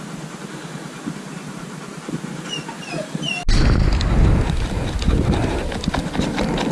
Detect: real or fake real